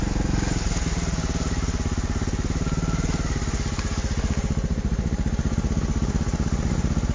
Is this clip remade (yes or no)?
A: no